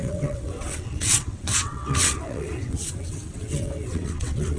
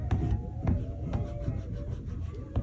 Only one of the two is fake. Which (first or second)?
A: first